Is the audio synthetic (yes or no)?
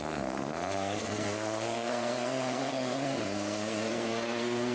yes